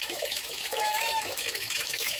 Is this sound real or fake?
fake